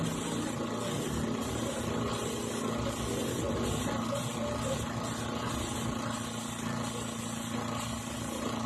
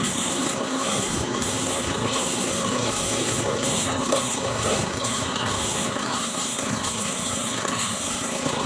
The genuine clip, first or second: first